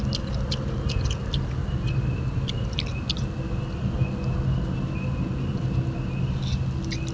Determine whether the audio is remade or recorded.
recorded